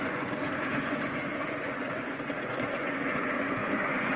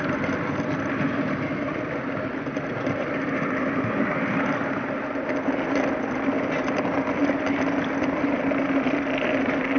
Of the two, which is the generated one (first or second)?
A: first